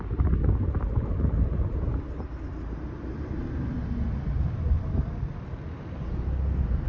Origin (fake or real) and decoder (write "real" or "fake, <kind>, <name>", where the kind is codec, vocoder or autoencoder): real